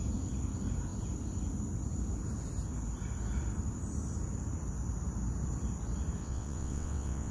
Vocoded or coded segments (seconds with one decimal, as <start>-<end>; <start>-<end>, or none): 6.2-7.3